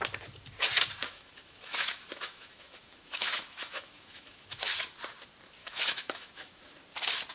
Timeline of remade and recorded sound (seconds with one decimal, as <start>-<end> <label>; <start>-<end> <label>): 0.0-1.0 recorded; 1.0-4.7 remade; 4.7-5.6 recorded; 5.6-6.6 remade; 6.6-7.3 recorded